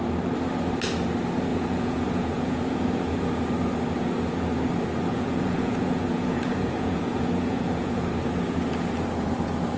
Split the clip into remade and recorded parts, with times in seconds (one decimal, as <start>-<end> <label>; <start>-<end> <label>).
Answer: 0.0-1.5 recorded; 1.5-3.3 remade; 3.3-5.1 recorded; 5.1-8.1 remade; 8.1-9.8 recorded